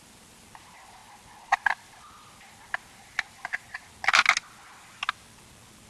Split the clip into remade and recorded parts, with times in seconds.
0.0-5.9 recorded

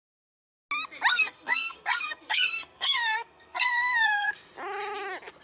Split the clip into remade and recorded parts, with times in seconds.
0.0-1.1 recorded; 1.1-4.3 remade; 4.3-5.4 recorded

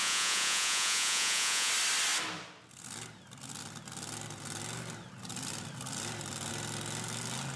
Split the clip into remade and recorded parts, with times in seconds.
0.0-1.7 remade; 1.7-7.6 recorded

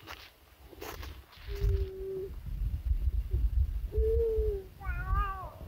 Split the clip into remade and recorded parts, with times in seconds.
0.0-5.7 recorded

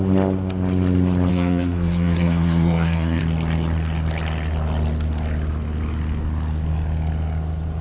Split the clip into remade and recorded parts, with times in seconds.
0.0-1.3 recorded; 1.3-3.2 remade; 3.2-7.8 recorded

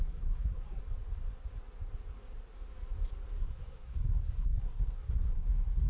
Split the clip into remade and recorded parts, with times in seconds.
0.0-0.8 remade; 0.8-3.4 recorded; 3.4-5.9 remade

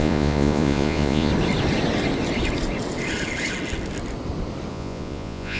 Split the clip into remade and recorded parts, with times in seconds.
0.0-1.3 remade; 1.3-4.7 recorded; 4.7-5.6 remade

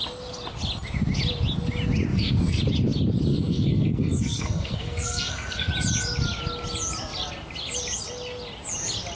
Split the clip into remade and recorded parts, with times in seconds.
0.0-2.1 recorded; 2.1-2.6 remade; 2.6-3.3 recorded; 3.3-5.7 remade; 5.7-9.2 recorded